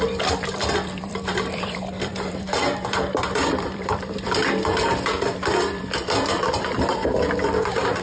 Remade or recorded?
remade